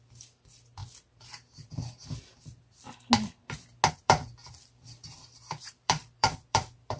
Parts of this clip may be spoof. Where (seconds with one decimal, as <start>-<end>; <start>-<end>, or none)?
0.0-0.8; 3.9-7.0